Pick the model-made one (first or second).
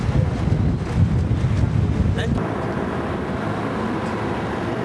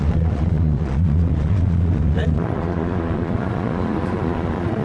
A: second